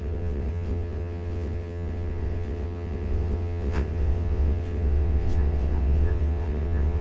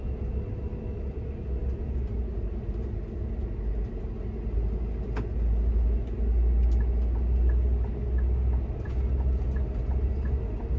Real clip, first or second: second